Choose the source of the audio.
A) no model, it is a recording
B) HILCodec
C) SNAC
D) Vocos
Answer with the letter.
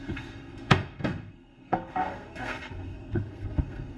C